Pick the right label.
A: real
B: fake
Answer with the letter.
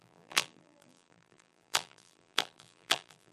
B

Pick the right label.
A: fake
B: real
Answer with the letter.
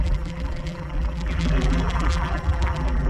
A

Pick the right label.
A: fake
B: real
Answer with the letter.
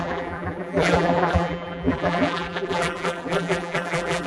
A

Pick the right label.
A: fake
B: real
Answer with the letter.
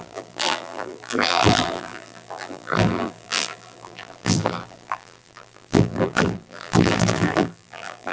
A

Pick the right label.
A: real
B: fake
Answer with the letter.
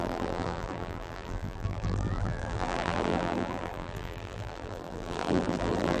B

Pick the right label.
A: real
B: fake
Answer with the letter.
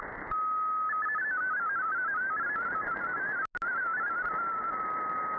A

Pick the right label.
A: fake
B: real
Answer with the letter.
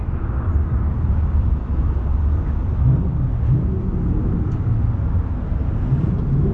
B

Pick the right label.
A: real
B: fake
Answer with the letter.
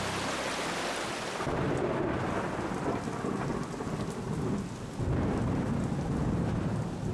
A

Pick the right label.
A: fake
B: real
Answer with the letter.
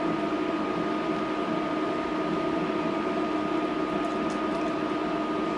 B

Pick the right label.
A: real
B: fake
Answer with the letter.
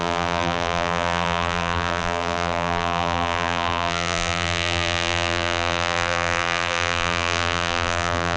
B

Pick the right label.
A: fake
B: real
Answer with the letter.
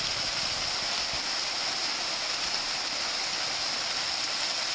B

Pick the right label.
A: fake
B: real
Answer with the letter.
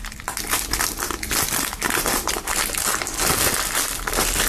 B